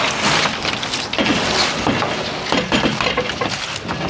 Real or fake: real